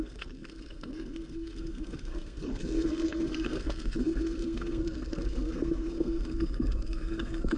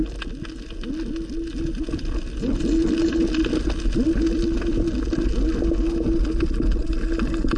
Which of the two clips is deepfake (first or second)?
first